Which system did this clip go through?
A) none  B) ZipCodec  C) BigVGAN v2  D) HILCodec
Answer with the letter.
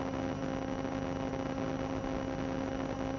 A